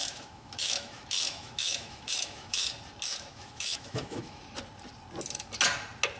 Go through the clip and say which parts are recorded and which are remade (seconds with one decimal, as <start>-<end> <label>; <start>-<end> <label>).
0.0-2.7 remade; 2.7-3.1 recorded; 3.1-4.4 remade; 4.4-6.2 recorded